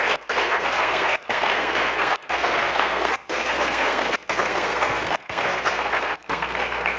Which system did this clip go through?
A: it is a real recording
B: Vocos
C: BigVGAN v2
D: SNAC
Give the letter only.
D